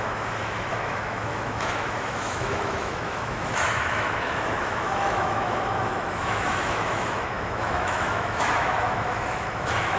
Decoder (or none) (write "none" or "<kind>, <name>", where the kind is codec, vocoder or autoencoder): autoencoder, DAC-VAE